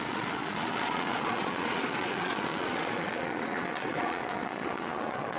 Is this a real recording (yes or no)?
no